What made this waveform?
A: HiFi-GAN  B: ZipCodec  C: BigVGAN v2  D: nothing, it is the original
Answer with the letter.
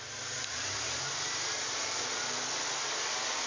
D